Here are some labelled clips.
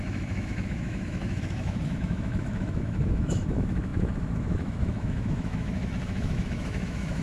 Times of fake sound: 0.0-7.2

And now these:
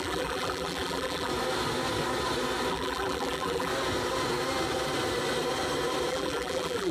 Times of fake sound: 0.0-1.3; 2.7-3.7; 6.1-6.9

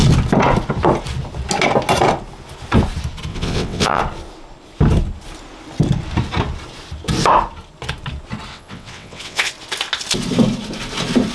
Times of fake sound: 3.3-4.0; 8.5-9.5

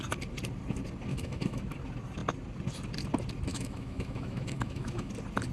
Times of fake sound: 1.1-1.6; 3.5-5.1

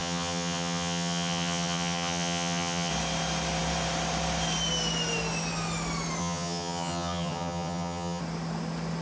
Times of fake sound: 0.0-2.9; 6.2-8.2